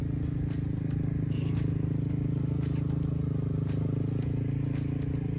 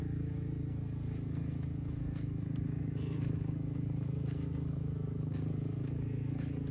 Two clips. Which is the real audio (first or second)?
first